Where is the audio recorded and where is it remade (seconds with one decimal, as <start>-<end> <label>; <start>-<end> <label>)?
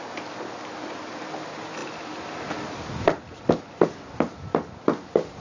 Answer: 0.0-5.4 recorded